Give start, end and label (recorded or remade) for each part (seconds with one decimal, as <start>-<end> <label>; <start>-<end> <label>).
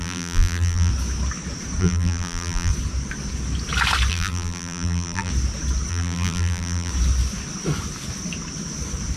0.0-0.9 remade; 0.9-1.8 recorded; 1.8-2.7 remade; 2.7-4.1 recorded; 4.1-5.3 remade; 5.3-5.9 recorded; 5.9-6.9 remade; 6.9-9.2 recorded